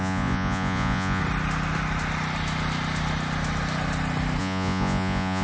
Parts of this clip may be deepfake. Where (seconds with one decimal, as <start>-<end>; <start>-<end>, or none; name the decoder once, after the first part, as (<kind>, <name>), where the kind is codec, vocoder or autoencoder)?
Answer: 0.0-1.2 (vocoder, Vocos); 4.4-5.4